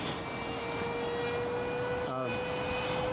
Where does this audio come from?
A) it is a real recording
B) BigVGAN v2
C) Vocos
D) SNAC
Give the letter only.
A